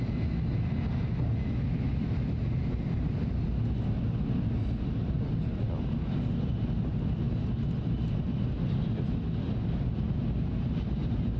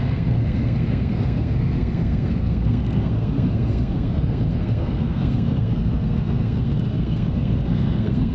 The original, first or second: first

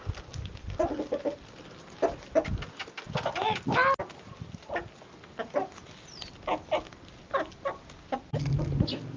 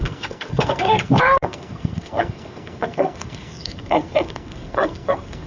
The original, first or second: first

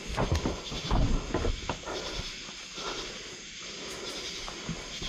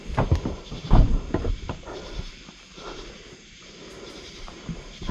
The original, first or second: first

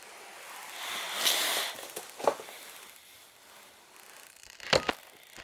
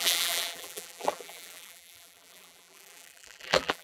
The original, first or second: first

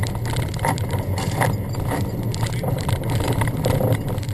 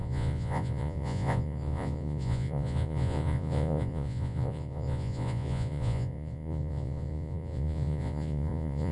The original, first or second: first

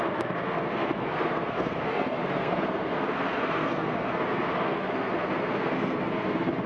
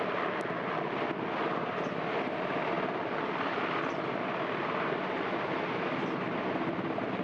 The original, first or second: second